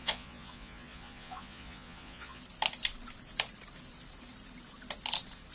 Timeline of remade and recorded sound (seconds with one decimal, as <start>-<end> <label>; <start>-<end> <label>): 0.0-2.4 remade; 2.4-5.5 recorded